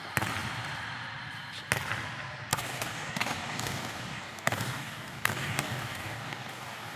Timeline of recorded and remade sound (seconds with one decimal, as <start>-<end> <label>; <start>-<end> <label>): 0.0-2.5 recorded; 2.5-7.0 remade

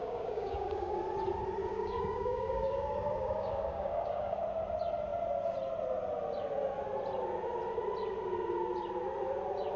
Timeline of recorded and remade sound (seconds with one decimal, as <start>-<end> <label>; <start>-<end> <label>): 0.0-1.0 remade; 1.0-1.6 recorded; 1.6-4.4 remade; 4.4-9.8 recorded

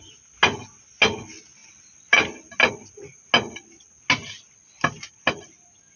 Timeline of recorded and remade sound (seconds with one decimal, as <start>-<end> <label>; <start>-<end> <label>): 0.0-6.0 recorded

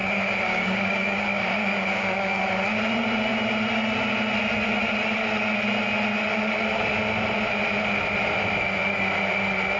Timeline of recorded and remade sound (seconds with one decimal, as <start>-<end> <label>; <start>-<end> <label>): 0.0-2.4 remade; 2.4-9.8 recorded

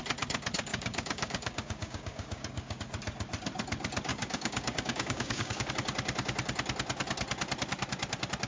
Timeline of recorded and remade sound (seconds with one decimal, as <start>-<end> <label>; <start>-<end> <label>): 0.0-0.7 recorded; 0.7-2.8 remade; 2.8-4.1 recorded; 4.1-5.7 remade; 5.7-8.5 recorded